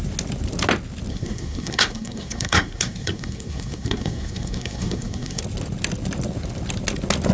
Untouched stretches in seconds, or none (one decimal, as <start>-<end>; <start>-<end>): 0.0-1.1; 5.4-7.3